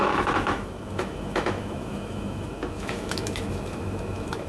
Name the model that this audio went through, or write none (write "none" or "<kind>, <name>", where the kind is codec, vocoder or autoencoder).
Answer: autoencoder, DAC-VAE